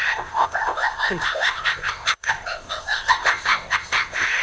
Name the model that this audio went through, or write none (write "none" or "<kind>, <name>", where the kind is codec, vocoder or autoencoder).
codec, ZipCodec